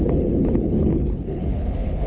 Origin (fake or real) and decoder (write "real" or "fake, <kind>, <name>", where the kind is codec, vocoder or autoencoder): fake, codec, HILCodec